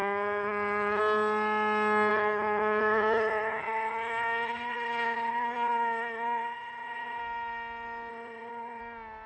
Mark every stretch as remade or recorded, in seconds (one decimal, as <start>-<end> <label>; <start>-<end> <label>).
0.0-1.0 remade; 1.0-2.1 recorded; 2.1-7.2 remade; 7.2-8.1 recorded; 8.1-8.8 remade; 8.8-9.3 recorded